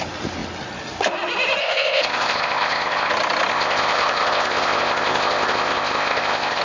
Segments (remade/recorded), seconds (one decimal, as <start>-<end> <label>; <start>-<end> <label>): 0.0-1.6 recorded; 1.6-3.1 remade; 3.1-3.5 recorded; 3.5-6.6 remade